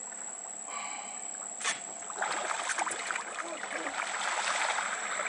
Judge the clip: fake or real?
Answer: real